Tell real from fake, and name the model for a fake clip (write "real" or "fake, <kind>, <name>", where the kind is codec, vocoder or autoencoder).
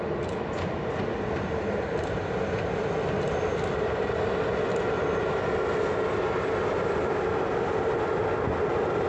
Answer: real